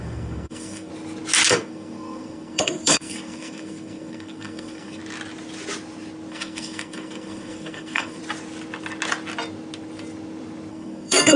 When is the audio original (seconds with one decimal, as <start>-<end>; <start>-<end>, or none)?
0.9-1.5; 5.0-6.3; 8.2-10.7